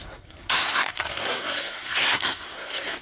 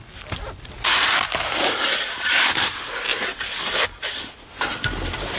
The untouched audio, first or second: second